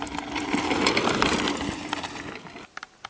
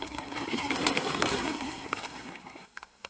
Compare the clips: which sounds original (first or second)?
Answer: first